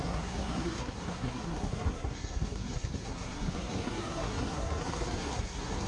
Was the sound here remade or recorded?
remade